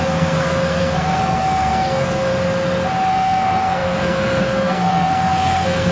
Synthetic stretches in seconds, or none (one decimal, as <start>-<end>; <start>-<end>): 0.0-2.3; 3.1-5.9